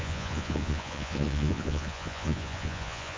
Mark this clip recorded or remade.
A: remade